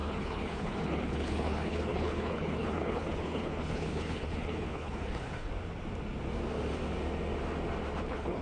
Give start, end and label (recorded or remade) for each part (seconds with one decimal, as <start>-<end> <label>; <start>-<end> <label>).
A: 0.0-5.5 remade; 5.5-8.0 recorded; 8.0-8.4 remade